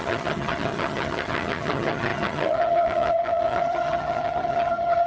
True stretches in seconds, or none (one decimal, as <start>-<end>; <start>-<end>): none